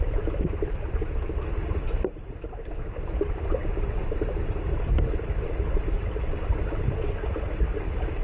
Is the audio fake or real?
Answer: real